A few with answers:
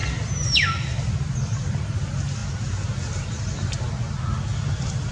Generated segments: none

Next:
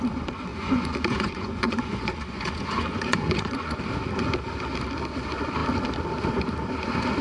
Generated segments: 0.5-3.8 (vocoder, Vocos)

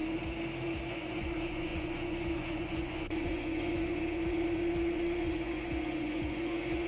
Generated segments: 0.9-6.9 (vocoder, Vocos)

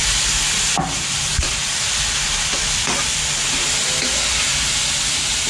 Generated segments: none

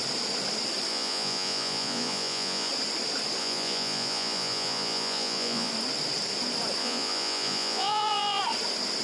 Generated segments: 0.9-2.7 (vocoder, Vocos); 3.4-5.7; 6.8-8.4